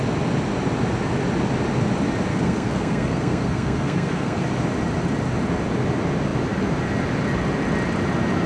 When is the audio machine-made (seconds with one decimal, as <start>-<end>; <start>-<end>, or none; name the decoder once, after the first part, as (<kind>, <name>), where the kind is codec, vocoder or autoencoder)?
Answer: 2.3-4.4 (codec, SNAC)